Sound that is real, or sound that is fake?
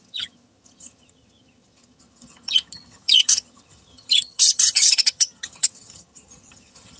fake